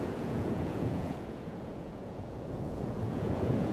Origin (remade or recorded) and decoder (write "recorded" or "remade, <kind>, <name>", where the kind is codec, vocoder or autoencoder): remade, vocoder, Vocos